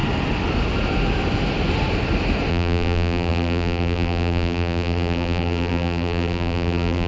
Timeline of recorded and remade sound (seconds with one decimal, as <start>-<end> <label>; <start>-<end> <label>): 0.0-2.5 recorded; 2.5-7.1 remade